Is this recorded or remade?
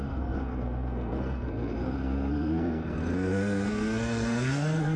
remade